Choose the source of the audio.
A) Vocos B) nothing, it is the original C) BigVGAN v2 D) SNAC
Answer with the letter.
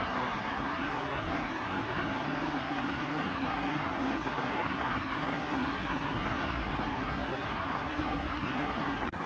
D